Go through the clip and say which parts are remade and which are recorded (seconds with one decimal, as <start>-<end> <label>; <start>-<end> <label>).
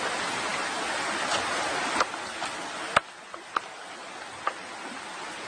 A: 0.0-5.5 recorded